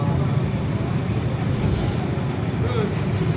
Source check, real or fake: real